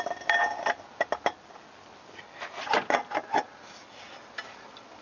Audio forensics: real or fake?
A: real